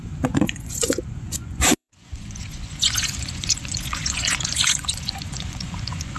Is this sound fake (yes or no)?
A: yes